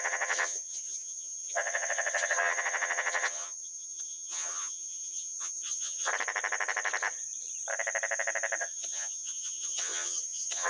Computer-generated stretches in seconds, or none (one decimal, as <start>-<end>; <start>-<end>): 0.0-6.1; 8.6-10.7